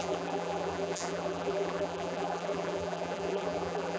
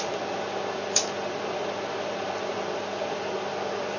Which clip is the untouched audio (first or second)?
second